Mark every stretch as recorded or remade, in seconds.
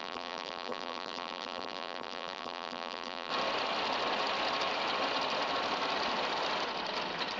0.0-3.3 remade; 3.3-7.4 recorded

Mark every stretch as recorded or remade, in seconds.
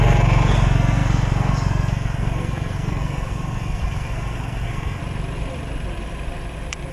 0.0-5.0 remade; 5.0-6.9 recorded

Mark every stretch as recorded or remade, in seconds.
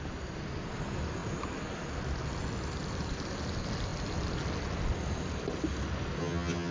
0.0-6.2 recorded; 6.2-6.7 remade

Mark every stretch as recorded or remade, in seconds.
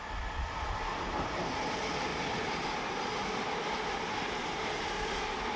0.0-0.9 recorded; 0.9-2.1 remade; 2.1-5.6 recorded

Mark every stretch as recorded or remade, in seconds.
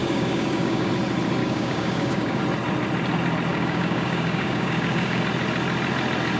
0.0-0.9 remade; 0.9-1.4 recorded; 1.4-2.4 remade; 2.4-3.5 recorded; 3.5-5.2 remade; 5.2-6.4 recorded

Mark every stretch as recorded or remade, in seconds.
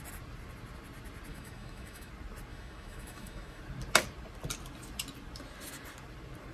0.0-1.3 recorded; 1.3-2.1 remade; 2.1-2.5 recorded; 2.5-3.6 remade; 3.6-6.5 recorded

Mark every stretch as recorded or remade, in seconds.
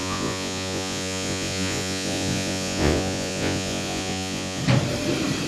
0.0-4.6 remade; 4.6-5.5 recorded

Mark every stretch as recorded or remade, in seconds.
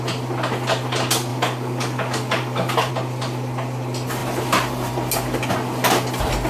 0.0-1.3 recorded; 1.3-2.9 remade; 2.9-6.5 recorded